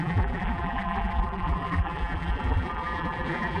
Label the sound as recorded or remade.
remade